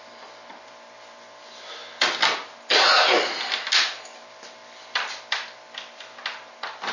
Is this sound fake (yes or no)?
no